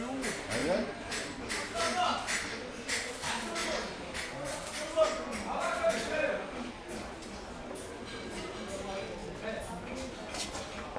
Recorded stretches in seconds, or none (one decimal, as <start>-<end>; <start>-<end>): 0.0-11.0